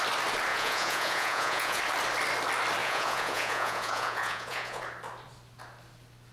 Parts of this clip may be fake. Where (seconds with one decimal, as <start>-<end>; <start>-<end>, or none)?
0.5-1.8; 2.8-4.8